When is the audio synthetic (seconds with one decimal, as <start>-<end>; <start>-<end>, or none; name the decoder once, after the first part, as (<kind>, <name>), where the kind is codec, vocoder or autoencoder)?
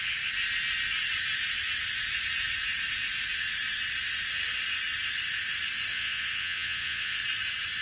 5.9-7.2 (vocoder, Vocos)